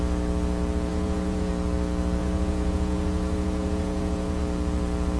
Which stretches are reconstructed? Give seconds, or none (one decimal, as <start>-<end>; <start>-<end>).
0.9-1.5; 2.2-4.4